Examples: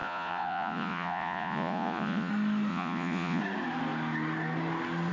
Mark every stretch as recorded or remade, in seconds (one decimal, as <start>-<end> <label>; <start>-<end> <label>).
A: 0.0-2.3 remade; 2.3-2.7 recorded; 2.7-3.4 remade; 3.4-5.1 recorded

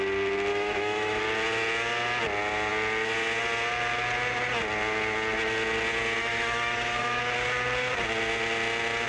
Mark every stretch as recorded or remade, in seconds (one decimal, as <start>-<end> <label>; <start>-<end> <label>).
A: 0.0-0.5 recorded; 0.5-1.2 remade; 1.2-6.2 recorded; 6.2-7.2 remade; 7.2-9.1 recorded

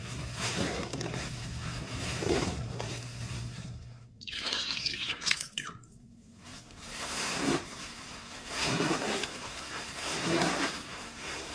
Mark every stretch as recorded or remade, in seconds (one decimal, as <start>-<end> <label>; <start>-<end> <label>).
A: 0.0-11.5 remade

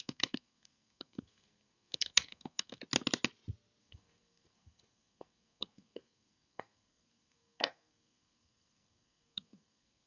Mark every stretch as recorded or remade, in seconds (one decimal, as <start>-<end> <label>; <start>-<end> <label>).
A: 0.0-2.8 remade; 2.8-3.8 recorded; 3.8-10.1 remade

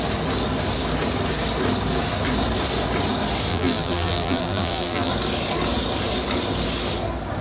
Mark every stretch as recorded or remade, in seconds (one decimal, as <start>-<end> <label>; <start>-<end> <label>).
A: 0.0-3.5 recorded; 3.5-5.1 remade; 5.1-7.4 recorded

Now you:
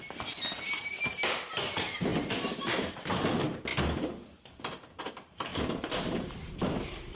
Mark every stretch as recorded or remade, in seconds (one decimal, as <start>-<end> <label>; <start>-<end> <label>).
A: 0.0-5.5 recorded; 5.5-7.2 remade

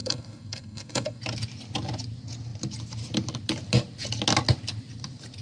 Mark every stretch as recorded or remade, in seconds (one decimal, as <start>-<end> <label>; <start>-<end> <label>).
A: 0.0-1.2 remade; 1.2-5.4 recorded